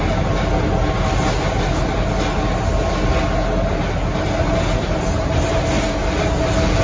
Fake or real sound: real